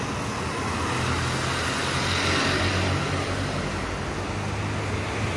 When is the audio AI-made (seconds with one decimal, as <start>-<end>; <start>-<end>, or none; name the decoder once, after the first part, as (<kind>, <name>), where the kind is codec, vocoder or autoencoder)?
none